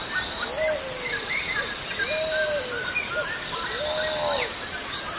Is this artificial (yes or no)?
no